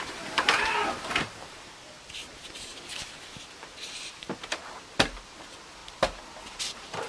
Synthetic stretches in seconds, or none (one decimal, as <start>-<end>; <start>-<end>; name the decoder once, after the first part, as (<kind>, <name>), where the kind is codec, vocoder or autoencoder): 0.0-2.7 (vocoder, BigVGAN v2); 3.5-4.6; 5.3-5.8; 6.6-7.1